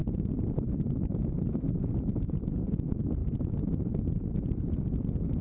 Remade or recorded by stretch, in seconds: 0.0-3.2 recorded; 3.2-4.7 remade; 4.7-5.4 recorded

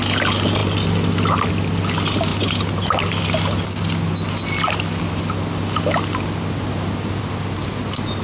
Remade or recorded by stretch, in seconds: 0.0-8.2 recorded